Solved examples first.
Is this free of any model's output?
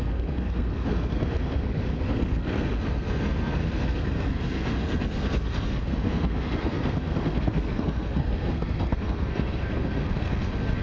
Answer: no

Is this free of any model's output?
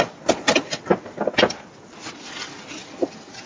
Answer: yes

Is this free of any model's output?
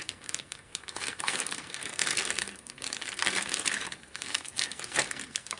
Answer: no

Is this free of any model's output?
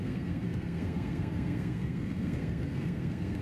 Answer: no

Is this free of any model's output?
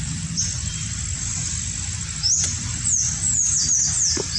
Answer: yes